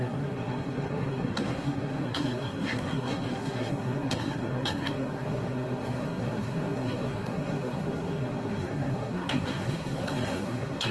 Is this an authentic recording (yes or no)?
no